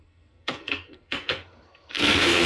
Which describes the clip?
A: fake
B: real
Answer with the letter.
A